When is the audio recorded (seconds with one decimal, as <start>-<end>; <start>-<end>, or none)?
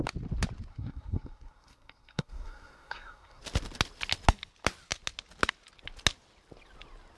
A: 0.0-0.7; 3.4-7.2